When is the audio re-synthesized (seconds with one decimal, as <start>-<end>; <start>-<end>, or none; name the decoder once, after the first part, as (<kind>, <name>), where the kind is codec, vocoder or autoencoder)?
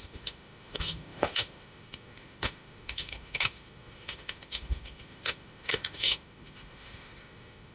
0.0-7.7 (autoencoder, DAC-VAE)